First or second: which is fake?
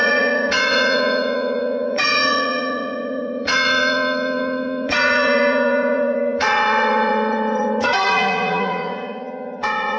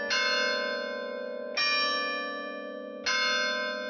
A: first